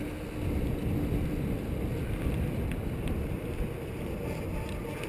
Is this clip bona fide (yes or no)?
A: yes